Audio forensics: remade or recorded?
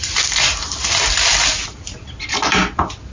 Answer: recorded